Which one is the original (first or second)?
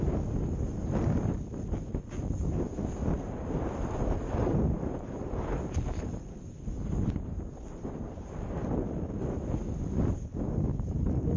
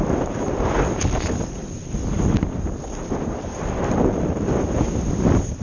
first